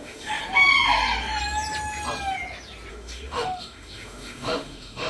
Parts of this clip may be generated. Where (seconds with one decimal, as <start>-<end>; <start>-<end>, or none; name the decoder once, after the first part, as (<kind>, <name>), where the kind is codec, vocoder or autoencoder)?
0.0-0.4 (autoencoder, DAC-VAE); 2.9-5.1